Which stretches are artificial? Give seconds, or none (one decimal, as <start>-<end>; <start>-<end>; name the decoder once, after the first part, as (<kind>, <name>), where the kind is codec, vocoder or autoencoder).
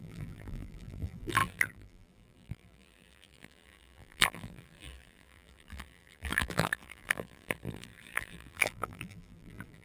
0.0-9.8 (vocoder, BigVGAN v2)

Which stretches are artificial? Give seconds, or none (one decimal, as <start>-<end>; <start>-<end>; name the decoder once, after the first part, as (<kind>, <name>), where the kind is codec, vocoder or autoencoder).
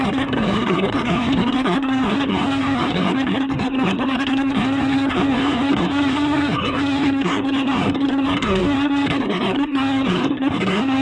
0.0-11.0 (codec, SNAC)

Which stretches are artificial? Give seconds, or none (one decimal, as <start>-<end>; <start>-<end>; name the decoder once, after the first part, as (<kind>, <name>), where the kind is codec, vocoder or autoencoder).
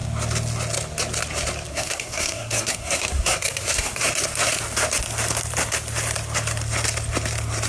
1.7-4.0 (codec, SNAC)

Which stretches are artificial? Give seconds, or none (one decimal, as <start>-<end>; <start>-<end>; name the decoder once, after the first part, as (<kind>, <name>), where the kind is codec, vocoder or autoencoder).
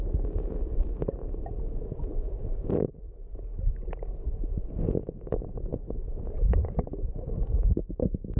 none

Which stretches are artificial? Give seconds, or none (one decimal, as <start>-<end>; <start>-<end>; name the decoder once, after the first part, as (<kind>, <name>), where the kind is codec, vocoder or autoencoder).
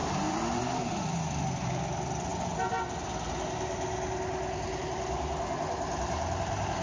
0.0-0.6 (vocoder, BigVGAN v2)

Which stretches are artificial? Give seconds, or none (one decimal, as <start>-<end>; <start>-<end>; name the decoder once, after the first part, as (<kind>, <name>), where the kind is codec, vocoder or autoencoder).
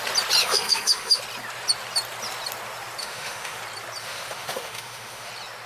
0.4-1.2 (autoencoder, DAC-VAE); 3.0-3.6; 4.0-5.3